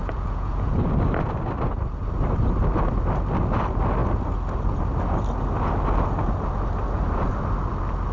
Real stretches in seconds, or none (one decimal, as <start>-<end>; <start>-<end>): 0.8-8.1